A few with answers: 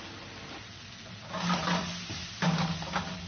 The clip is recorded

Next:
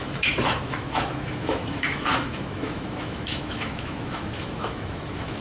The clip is remade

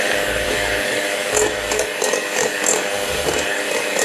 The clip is remade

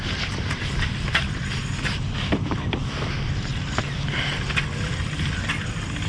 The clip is recorded